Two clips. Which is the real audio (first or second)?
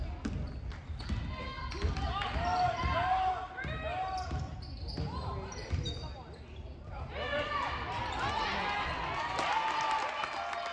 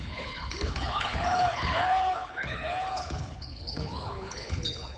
first